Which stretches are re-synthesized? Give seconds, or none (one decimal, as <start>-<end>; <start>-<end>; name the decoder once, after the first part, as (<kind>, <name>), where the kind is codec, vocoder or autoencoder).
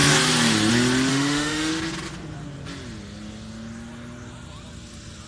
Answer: 1.1-1.7 (autoencoder, DAC-VAE)